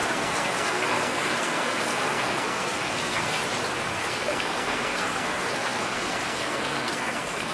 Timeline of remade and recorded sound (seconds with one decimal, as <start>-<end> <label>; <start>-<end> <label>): 0.0-3.4 remade; 3.4-3.9 recorded; 3.9-7.5 remade